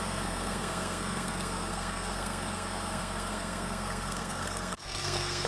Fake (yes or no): yes